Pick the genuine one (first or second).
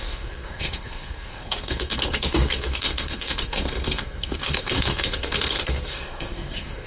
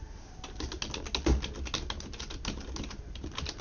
second